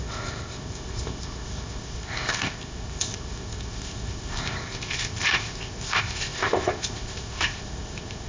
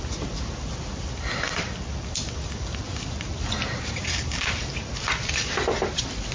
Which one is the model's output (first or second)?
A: first